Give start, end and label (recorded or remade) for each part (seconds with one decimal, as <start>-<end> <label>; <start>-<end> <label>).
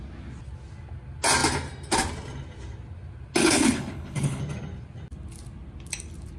0.0-3.4 recorded; 3.4-4.4 remade; 4.4-6.4 recorded